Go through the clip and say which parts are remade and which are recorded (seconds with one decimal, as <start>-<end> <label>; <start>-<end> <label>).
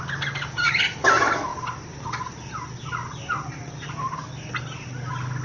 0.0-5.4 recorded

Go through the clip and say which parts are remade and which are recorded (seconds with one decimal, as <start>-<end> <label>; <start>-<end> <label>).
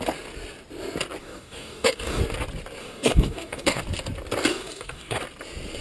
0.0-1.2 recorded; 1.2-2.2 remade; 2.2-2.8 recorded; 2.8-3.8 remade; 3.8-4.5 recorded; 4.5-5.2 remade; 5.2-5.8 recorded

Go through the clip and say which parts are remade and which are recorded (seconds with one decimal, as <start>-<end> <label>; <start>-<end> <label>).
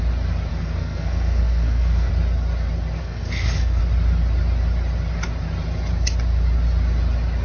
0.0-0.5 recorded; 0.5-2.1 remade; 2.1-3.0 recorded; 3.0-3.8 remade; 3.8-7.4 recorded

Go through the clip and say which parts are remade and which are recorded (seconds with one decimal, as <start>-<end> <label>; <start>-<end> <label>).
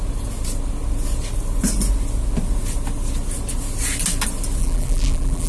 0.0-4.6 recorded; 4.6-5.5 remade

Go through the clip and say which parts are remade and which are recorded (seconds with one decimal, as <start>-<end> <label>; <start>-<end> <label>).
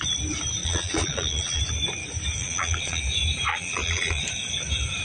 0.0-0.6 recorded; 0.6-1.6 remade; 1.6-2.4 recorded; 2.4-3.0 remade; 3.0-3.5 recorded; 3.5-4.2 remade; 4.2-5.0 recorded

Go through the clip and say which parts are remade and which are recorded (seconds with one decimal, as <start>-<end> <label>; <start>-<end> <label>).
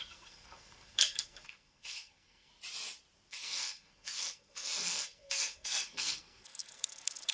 0.0-2.5 remade; 2.5-3.3 recorded; 3.3-7.3 remade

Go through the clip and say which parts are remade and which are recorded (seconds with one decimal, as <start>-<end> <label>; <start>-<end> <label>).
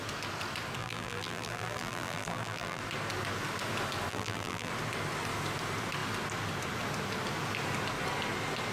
0.0-0.8 recorded; 0.8-2.8 remade; 2.8-4.1 recorded; 4.1-4.7 remade; 4.7-8.7 recorded